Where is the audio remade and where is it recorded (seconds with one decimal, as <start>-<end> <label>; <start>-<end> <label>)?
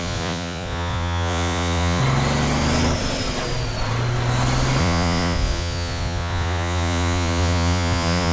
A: 0.0-2.0 remade; 2.0-4.8 recorded; 4.8-8.3 remade